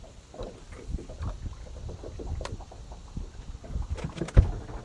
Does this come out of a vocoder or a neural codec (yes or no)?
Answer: no